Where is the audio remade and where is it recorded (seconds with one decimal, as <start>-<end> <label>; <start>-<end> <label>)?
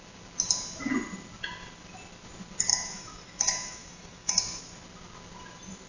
0.0-2.7 recorded; 2.7-4.6 remade; 4.6-5.9 recorded